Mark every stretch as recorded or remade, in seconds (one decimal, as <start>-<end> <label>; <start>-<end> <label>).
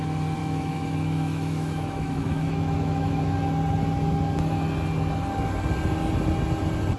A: 0.0-0.4 recorded; 0.4-3.2 remade; 3.2-7.0 recorded